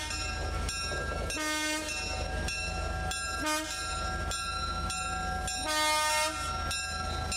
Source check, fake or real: real